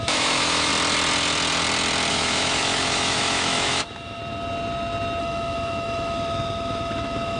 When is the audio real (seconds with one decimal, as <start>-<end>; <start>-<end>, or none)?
0.7-2.1; 4.2-5.2